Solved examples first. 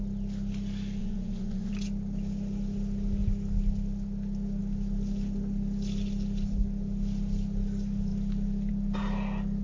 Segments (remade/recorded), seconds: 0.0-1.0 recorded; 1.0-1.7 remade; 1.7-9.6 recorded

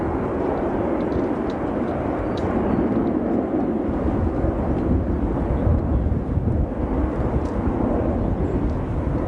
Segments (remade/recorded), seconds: 0.0-9.3 recorded

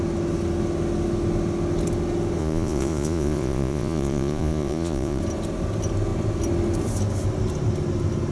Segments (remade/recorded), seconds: 0.0-2.4 recorded; 2.4-5.2 remade; 5.2-8.3 recorded

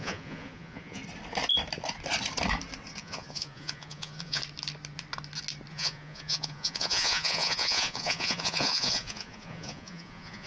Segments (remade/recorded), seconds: 0.0-1.0 remade; 1.0-3.0 recorded; 3.0-4.4 remade; 4.4-5.7 recorded; 5.7-10.5 remade

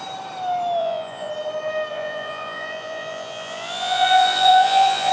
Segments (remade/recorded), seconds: 0.0-0.8 recorded; 0.8-1.3 remade; 1.3-1.9 recorded; 1.9-5.1 remade

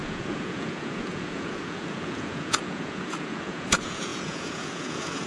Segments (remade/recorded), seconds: 0.0-5.3 remade

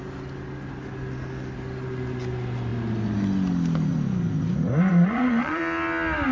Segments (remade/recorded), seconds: 0.0-4.9 recorded; 4.9-5.6 remade; 5.6-6.3 recorded